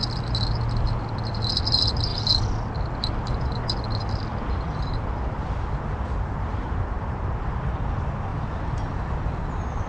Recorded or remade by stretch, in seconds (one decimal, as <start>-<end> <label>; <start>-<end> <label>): 0.0-6.5 recorded; 6.5-7.3 remade; 7.3-8.3 recorded; 8.3-9.1 remade; 9.1-9.9 recorded